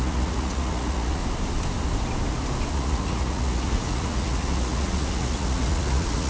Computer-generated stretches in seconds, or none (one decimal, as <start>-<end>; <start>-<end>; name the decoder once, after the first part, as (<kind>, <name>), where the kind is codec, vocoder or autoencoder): 0.0-1.2 (vocoder, Vocos); 2.7-6.3